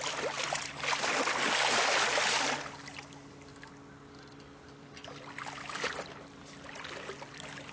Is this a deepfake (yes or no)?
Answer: no